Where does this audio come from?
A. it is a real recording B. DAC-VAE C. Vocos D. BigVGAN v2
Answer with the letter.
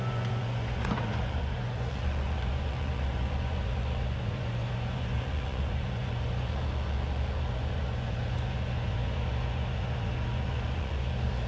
C